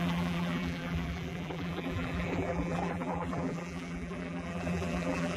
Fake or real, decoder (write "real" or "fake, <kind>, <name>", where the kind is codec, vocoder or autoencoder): fake, vocoder, BigVGAN v2